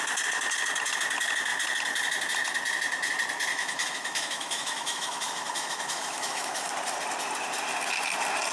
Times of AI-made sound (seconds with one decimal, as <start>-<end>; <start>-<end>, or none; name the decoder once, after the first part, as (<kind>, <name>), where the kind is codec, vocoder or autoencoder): 3.5-6.7 (autoencoder, DAC-VAE)

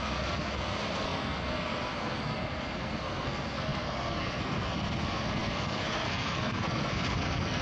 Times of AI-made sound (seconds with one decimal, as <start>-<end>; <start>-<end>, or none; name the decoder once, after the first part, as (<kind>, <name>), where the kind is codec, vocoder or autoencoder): 0.0-7.6 (codec, SNAC)

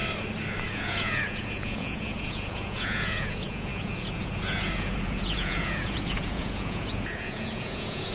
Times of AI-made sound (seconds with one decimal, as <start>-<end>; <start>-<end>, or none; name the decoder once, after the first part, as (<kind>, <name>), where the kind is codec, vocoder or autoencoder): 0.7-8.1 (vocoder, Vocos)

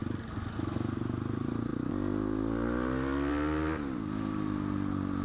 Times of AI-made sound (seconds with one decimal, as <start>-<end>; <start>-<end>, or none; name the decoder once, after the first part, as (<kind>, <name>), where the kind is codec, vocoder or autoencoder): none

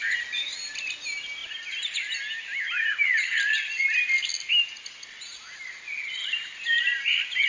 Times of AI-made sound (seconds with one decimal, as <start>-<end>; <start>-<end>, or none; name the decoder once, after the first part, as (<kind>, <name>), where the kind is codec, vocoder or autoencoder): 6.2-7.5 (vocoder, BigVGAN v2)

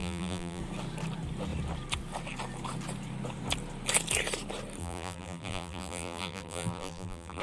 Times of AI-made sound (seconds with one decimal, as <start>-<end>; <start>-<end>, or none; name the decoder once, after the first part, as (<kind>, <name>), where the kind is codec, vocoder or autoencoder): 0.0-0.6 (vocoder, BigVGAN v2); 4.8-7.4